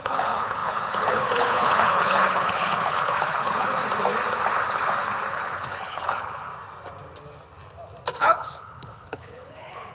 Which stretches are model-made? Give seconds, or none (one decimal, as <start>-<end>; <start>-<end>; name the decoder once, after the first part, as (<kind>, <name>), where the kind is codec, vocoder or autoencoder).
0.0-3.8 (codec, HILCodec); 5.3-6.5; 8.2-9.9